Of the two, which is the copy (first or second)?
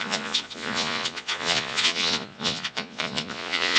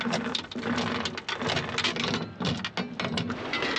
first